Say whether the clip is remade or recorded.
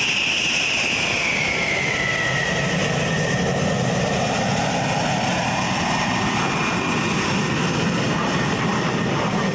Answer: recorded